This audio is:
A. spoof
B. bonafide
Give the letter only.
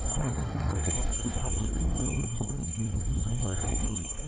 A